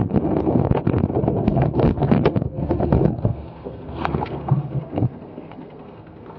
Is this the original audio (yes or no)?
no